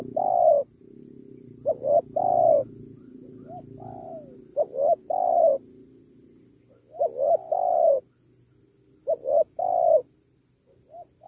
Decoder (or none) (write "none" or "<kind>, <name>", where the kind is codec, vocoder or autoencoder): none